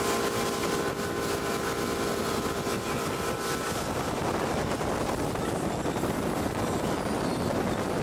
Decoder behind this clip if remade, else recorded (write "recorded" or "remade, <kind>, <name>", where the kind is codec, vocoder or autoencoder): recorded